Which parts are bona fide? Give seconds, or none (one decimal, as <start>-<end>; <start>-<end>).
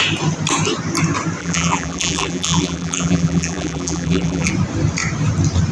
0.0-1.4; 4.5-5.7